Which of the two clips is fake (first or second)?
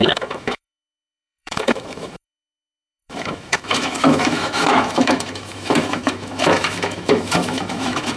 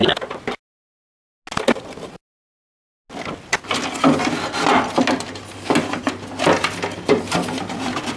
first